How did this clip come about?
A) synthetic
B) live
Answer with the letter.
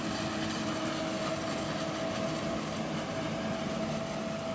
B